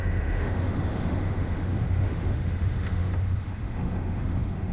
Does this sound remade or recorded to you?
remade